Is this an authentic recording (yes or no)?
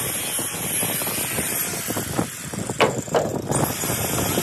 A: yes